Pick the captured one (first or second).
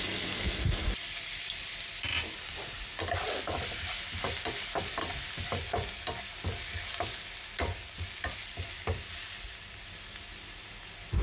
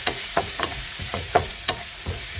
first